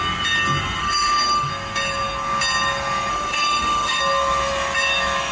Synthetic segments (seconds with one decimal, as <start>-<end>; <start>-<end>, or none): 0.8-1.5; 3.1-4.0